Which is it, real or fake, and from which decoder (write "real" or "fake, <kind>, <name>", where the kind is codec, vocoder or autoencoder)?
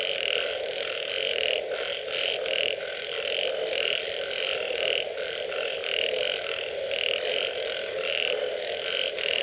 real